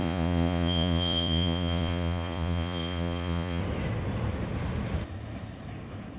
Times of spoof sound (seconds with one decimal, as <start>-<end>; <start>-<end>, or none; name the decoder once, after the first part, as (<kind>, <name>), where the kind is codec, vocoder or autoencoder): 0.0-3.6 (vocoder, Vocos)